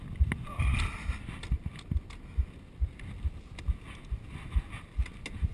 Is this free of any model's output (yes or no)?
yes